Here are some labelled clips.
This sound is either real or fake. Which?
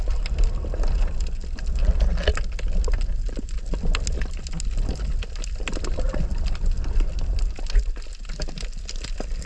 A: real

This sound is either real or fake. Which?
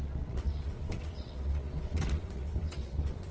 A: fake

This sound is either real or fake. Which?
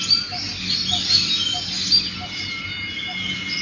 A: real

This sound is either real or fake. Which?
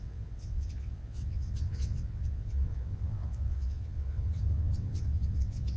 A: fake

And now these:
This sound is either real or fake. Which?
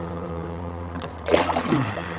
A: fake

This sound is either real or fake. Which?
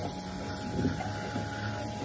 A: real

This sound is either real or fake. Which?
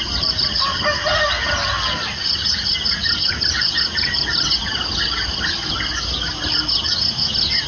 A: real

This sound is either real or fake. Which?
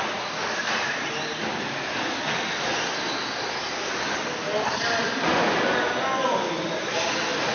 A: real